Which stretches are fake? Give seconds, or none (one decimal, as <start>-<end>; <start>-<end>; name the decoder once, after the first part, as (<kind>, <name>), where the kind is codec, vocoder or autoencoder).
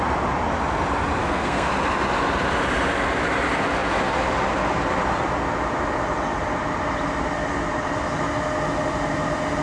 1.2-1.7 (codec, SNAC)